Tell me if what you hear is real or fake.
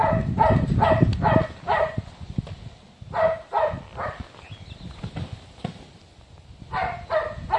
real